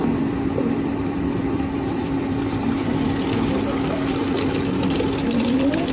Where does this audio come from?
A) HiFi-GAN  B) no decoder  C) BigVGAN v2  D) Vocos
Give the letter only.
C